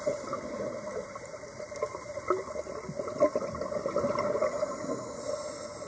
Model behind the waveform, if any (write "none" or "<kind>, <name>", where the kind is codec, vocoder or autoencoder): none